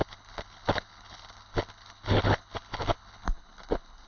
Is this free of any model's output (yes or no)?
no